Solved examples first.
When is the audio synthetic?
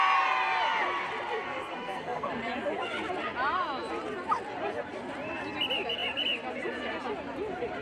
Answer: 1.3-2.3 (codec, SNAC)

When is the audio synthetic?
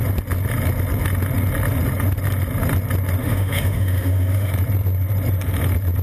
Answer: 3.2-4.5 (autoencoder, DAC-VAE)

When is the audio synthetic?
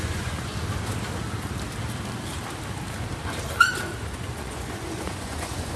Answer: 0.0-0.5 (vocoder, Vocos); 4.0-5.8